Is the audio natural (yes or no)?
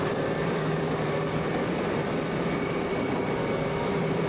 no